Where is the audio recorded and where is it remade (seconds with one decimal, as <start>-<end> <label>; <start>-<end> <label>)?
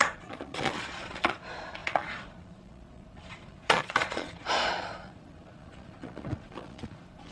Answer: 0.0-7.3 remade